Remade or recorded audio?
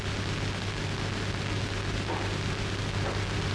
recorded